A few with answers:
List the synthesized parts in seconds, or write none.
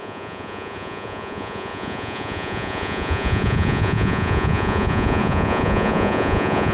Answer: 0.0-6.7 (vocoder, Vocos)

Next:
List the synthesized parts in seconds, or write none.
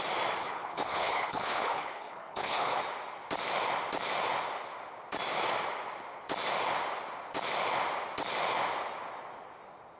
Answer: 0.4-2.8 (codec, HILCodec)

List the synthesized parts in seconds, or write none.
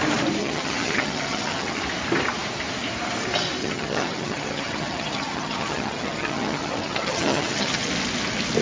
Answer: 0.4-1.8 (vocoder, HiFi-GAN); 3.6-7.9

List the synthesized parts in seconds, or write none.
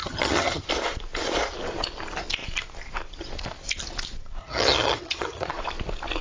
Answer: 0.0-0.7 (vocoder, HiFi-GAN); 4.4-5.5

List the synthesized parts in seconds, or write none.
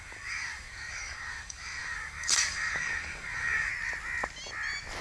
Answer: 0.0-3.7 (codec, DAC)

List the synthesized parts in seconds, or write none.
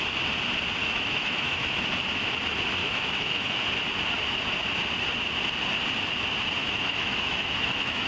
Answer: 0.8-1.8 (autoencoder, DAC-VAE); 2.8-3.7; 6.6-8.1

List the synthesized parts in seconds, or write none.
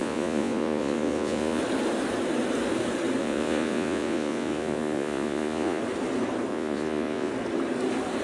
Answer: 0.0-1.6 (vocoder, Vocos); 3.2-5.8; 6.5-7.3